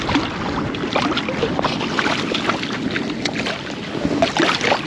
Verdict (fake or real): real